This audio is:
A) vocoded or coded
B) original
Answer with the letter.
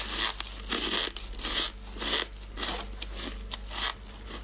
B